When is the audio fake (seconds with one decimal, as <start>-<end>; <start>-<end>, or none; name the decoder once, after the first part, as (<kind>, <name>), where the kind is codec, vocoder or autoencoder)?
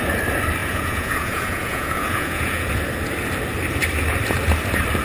0.6-2.7 (vocoder, Vocos)